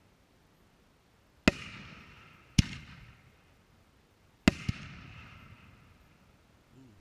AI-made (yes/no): no